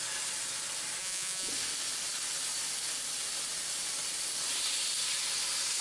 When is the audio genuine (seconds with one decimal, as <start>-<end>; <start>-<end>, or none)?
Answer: 0.0-1.0; 1.5-5.8